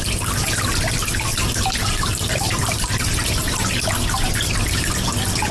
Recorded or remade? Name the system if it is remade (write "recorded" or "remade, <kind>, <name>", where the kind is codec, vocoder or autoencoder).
recorded